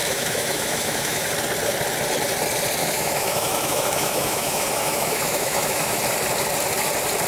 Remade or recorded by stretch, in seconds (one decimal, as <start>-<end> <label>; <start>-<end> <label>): 0.0-1.3 remade; 1.3-2.8 recorded; 2.8-6.0 remade; 6.0-7.3 recorded